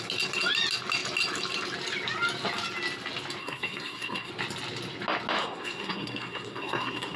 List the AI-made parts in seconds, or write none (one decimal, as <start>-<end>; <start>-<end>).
3.4-4.3; 5.4-7.2